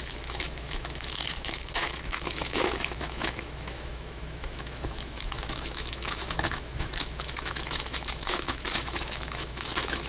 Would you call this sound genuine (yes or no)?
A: no